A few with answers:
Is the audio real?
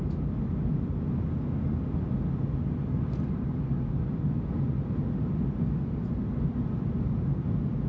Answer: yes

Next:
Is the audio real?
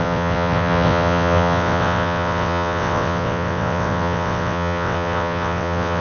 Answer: no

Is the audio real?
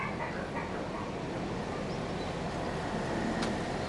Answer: yes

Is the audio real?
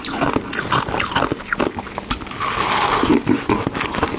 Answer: yes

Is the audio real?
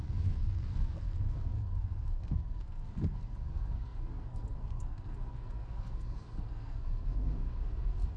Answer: no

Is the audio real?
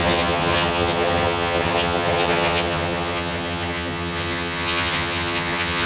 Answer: no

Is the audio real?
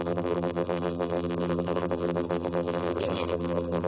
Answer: no